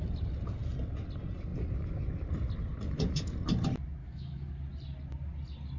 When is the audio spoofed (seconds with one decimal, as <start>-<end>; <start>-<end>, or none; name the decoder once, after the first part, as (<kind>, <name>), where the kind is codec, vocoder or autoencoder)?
4.0-4.5 (autoencoder, DAC-VAE)